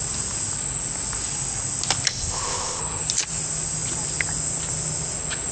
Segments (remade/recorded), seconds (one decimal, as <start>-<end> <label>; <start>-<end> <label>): 0.0-2.1 recorded; 2.1-2.8 remade; 2.8-5.5 recorded